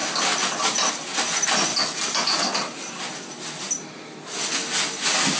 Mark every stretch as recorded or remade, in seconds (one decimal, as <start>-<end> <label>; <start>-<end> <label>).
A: 0.0-5.4 recorded